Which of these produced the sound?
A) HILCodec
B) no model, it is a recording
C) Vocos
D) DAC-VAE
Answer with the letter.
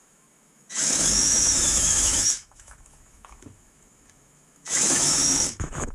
D